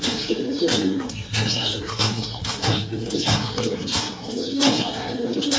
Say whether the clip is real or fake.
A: fake